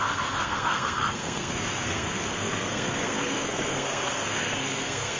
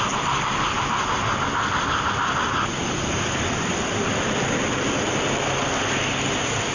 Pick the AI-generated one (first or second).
first